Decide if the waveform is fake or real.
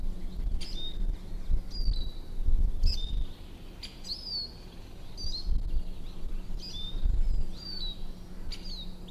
real